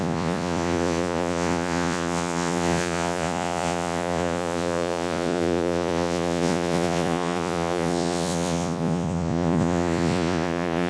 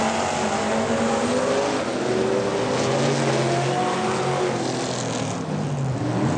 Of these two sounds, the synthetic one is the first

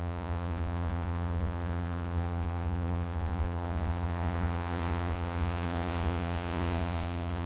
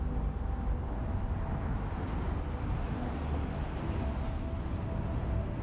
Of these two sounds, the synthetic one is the first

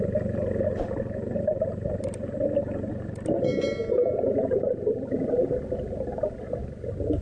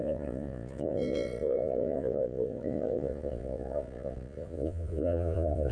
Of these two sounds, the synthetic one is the second